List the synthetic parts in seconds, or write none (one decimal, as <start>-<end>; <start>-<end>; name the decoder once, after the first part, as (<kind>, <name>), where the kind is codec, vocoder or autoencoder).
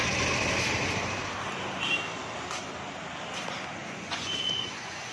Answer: 3.8-5.1 (vocoder, Vocos)